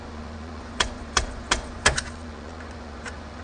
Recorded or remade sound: remade